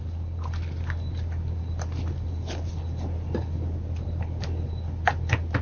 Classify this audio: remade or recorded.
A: recorded